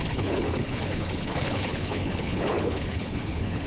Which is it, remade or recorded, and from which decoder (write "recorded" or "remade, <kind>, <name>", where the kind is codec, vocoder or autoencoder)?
remade, codec, HILCodec